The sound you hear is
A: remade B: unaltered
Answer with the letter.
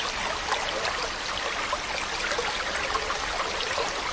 B